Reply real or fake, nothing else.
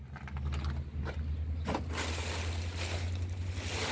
real